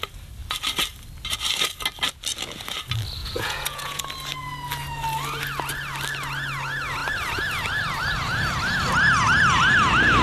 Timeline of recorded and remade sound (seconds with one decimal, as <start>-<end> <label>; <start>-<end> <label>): 0.0-3.2 recorded; 3.2-4.0 remade; 4.0-10.2 recorded